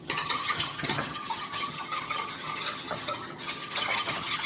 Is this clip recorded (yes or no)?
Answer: no